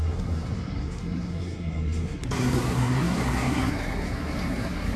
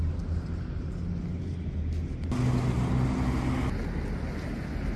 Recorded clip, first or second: second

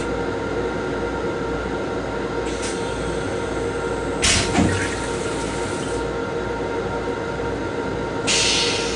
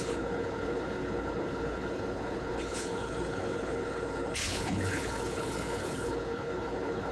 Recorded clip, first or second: first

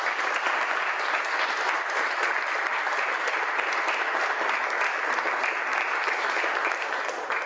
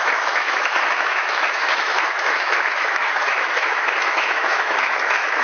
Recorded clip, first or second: first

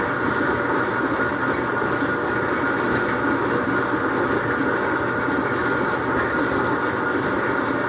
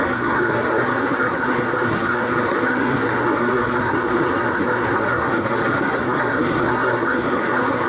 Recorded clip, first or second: first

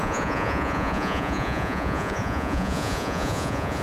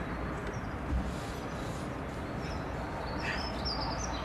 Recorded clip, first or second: second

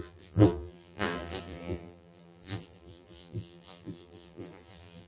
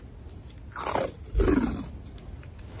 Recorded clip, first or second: second